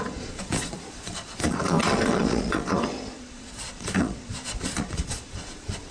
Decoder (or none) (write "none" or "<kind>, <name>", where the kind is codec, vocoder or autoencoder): vocoder, Vocos